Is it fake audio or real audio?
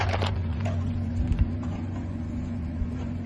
fake